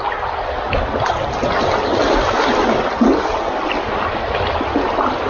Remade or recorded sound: recorded